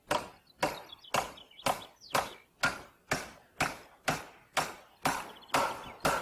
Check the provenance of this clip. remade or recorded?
recorded